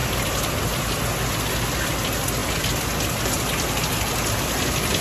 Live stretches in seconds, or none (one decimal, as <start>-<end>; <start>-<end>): 0.0-5.0